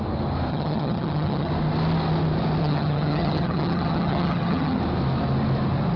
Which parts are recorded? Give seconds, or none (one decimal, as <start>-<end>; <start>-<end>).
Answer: 0.0-0.5; 1.5-2.6; 4.8-6.0